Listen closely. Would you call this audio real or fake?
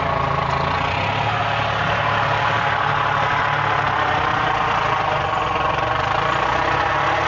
real